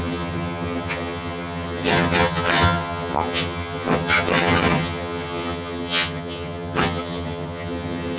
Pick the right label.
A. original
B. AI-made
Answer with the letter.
B